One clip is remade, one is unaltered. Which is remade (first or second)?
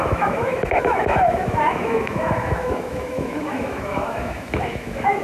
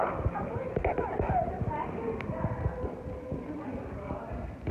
first